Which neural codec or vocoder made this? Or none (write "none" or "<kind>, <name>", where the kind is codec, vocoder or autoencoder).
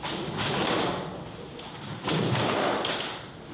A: none